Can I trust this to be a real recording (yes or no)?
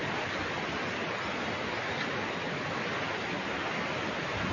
yes